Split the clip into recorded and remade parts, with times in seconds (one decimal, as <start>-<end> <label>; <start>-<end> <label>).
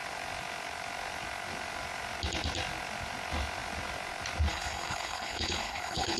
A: 0.0-4.5 recorded; 4.5-6.2 remade